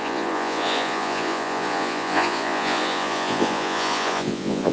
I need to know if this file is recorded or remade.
remade